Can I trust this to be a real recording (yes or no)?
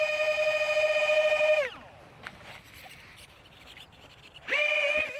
yes